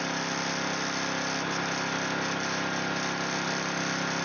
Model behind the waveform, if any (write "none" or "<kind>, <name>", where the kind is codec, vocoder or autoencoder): none